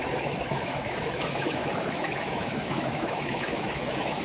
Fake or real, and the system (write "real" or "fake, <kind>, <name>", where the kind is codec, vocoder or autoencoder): fake, autoencoder, DAC-VAE